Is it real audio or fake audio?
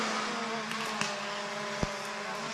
real